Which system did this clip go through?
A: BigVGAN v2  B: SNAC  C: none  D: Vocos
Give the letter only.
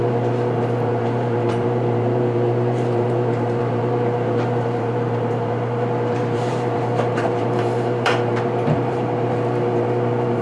A